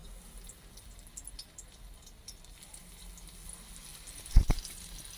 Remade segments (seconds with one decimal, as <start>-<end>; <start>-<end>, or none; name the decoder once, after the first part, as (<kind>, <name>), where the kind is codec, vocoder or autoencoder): 0.0-3.1 (vocoder, BigVGAN v2); 3.9-4.6